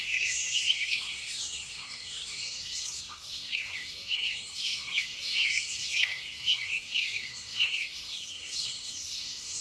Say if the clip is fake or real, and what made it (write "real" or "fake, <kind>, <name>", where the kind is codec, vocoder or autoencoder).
fake, codec, SNAC